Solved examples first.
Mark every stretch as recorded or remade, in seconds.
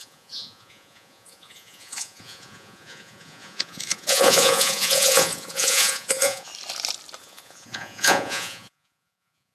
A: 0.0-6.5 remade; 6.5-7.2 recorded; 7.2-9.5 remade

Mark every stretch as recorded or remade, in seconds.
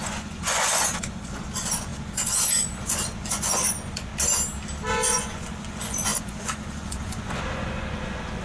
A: 0.0-4.1 remade; 4.1-4.9 recorded; 4.9-8.4 remade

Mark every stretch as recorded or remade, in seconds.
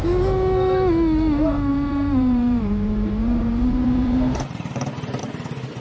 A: 0.0-1.7 recorded; 1.7-5.2 remade; 5.2-5.8 recorded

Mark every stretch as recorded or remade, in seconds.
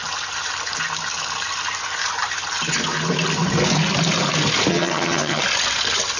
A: 0.0-4.7 recorded; 4.7-5.4 remade; 5.4-6.2 recorded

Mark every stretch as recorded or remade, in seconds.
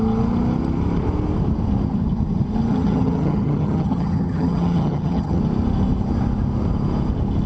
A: 0.0-2.7 recorded; 2.7-5.4 remade; 5.4-7.5 recorded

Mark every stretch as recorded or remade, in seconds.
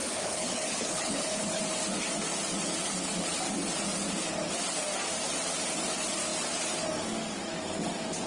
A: 0.0-1.6 remade; 1.6-8.3 recorded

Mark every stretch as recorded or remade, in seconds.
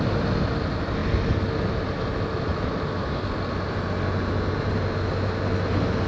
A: 0.0-6.1 recorded